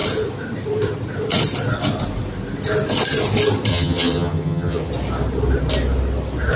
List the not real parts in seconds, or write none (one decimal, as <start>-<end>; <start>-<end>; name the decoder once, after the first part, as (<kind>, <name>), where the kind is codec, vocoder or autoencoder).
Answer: 3.7-4.9 (vocoder, HiFi-GAN)